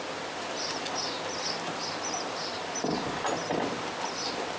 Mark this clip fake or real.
real